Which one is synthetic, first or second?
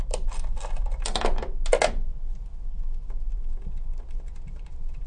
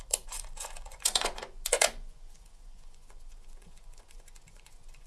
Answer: second